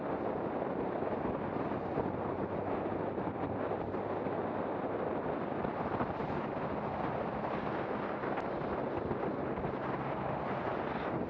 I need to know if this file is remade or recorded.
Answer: recorded